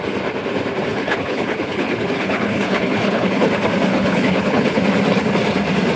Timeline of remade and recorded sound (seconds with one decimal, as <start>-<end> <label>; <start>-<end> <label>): 0.0-0.9 recorded; 0.9-3.5 remade; 3.5-3.9 recorded; 3.9-4.8 remade; 4.8-6.0 recorded